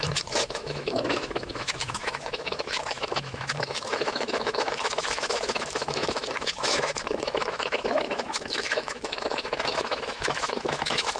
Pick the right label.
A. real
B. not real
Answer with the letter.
B